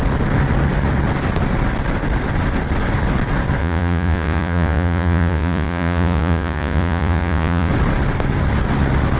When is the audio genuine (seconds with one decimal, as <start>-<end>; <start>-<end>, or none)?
0.0-3.6; 7.7-9.2